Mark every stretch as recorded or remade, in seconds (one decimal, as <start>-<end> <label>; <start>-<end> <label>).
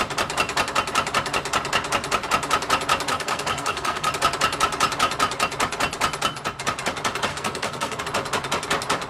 0.0-3.1 recorded; 3.1-4.1 remade; 4.1-7.3 recorded; 7.3-8.0 remade; 8.0-9.1 recorded